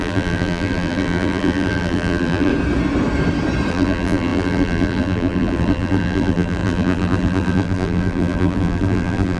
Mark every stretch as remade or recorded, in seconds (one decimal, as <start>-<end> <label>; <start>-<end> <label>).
0.0-2.5 remade; 2.5-3.7 recorded; 3.7-9.4 remade